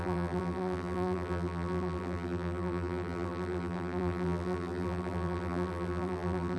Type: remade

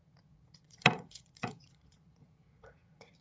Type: remade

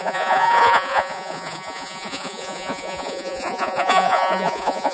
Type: remade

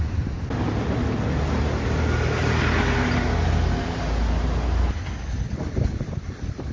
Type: recorded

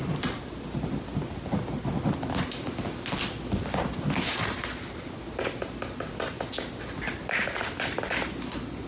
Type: recorded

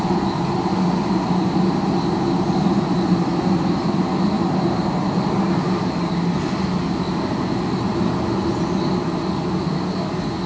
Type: recorded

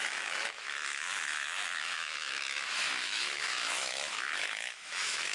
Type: remade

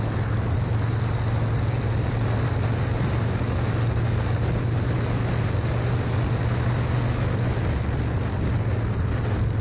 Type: recorded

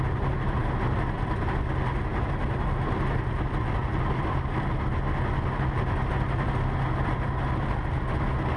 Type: recorded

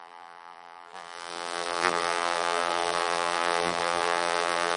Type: remade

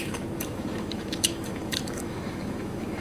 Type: remade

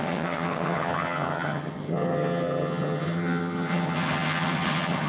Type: remade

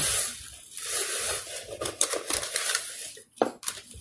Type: recorded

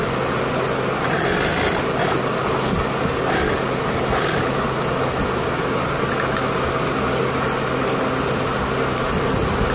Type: recorded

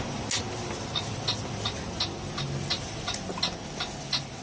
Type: recorded